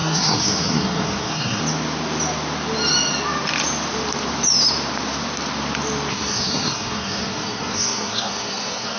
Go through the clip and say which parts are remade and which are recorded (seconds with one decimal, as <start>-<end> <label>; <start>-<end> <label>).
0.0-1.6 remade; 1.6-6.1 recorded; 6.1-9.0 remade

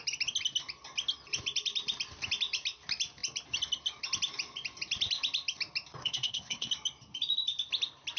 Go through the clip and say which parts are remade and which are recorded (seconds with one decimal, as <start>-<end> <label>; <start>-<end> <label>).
0.0-6.0 recorded; 6.0-6.7 remade; 6.7-8.2 recorded

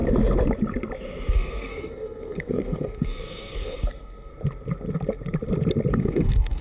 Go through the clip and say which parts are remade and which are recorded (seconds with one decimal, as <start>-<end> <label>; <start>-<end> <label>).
0.0-1.3 recorded; 1.3-4.3 remade; 4.3-5.9 recorded; 5.9-6.6 remade

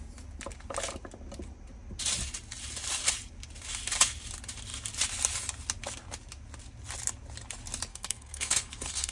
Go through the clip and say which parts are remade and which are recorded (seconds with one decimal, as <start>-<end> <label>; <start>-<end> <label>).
0.0-7.9 recorded; 7.9-9.1 remade

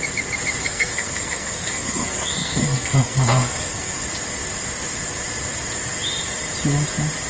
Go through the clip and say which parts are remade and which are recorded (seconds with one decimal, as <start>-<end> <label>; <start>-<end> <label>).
0.0-0.6 recorded; 0.6-4.0 remade; 4.0-7.3 recorded